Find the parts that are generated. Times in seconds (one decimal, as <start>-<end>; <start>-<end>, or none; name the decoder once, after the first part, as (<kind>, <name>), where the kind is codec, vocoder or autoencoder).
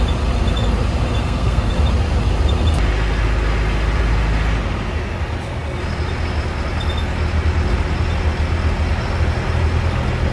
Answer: 1.2-1.7 (codec, SNAC)